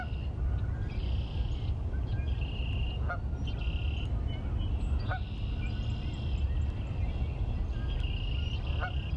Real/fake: real